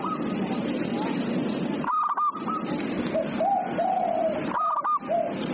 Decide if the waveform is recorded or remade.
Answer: recorded